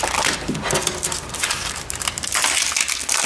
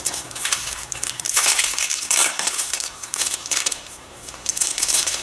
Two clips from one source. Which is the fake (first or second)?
second